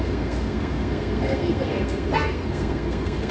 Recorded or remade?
remade